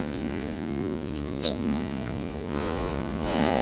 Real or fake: fake